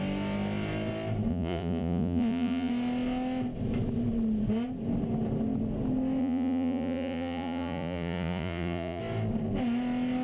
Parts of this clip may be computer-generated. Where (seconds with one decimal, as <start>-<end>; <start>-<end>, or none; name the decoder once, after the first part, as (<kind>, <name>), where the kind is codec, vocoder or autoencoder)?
1.3-2.7 (vocoder, Vocos); 6.2-9.0